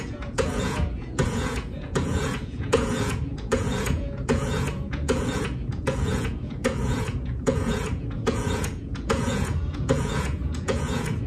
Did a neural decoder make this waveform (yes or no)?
yes